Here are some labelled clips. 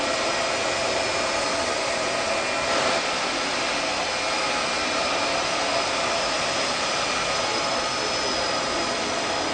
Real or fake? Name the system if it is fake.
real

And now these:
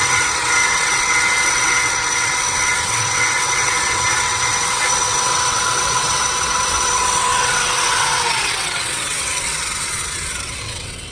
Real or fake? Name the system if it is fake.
fake, vocoder, WaveNeXt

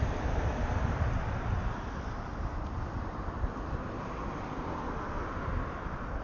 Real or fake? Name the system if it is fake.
real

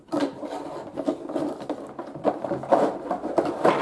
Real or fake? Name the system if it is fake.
real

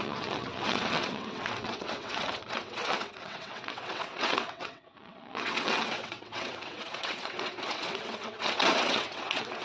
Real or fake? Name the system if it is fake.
fake, vocoder, WaveNeXt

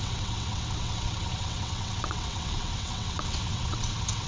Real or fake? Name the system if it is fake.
fake, vocoder, WaveNeXt